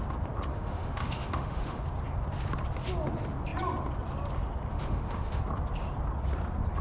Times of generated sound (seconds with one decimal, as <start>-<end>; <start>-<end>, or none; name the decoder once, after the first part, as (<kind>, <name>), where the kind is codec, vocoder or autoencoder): 0.5-1.8 (autoencoder, DAC-VAE); 4.7-5.4